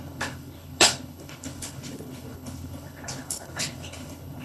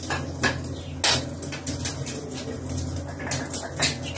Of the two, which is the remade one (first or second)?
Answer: first